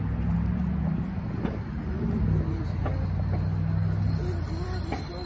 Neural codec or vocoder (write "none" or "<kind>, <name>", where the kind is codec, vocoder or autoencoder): none